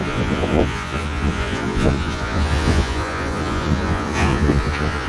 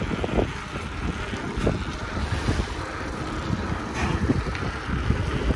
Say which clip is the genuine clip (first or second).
second